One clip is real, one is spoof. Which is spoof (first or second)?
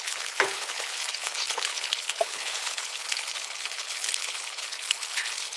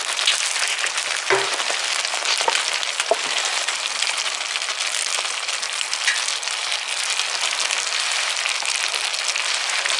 first